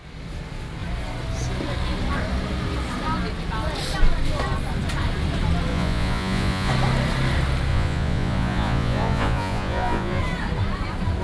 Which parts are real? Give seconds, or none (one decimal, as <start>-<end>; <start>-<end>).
0.0-5.7; 6.7-7.7; 10.2-11.2

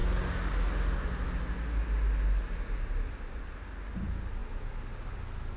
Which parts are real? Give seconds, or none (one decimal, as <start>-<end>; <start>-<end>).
0.0-5.6

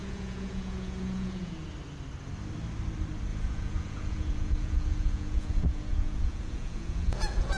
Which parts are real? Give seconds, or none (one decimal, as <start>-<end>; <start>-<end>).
1.6-3.3

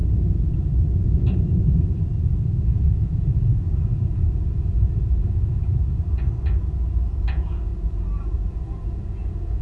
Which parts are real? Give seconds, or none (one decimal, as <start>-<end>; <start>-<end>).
0.0-2.6; 5.7-7.3; 7.7-8.5